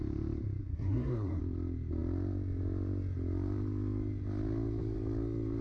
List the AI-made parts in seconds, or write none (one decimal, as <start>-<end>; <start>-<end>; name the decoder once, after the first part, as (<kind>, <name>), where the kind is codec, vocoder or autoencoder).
0.6-1.4 (codec, SNAC)